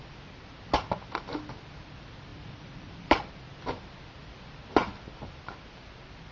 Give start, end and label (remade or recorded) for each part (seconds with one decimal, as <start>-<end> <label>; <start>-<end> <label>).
0.0-2.3 recorded; 2.3-3.3 remade; 3.3-6.3 recorded